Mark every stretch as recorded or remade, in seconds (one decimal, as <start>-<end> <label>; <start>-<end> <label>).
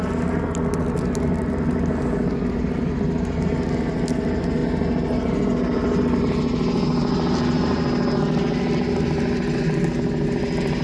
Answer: 0.0-10.8 recorded